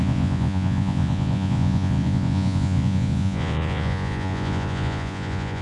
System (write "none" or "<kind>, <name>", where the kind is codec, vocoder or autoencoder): vocoder, Vocos